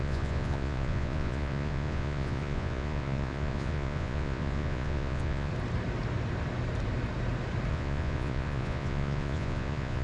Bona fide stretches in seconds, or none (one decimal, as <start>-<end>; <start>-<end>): 5.5-7.7